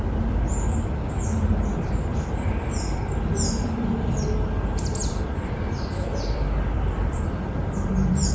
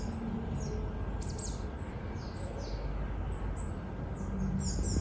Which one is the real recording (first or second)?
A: second